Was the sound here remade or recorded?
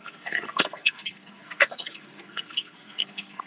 remade